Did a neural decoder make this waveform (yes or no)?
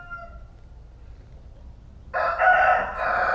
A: no